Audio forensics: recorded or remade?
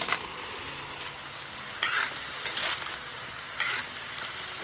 recorded